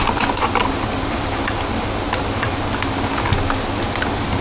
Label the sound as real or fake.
real